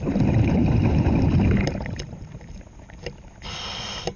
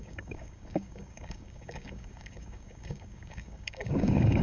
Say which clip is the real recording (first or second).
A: first